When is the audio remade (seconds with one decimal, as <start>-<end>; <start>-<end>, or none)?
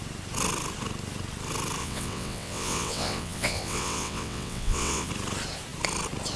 1.8-5.1